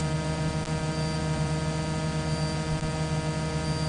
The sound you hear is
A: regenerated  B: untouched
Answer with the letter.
B